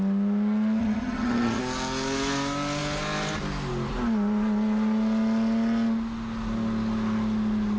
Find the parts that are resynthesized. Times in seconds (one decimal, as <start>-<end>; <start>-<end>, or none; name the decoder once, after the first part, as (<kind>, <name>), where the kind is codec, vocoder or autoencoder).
0.8-1.6 (vocoder, HiFi-GAN)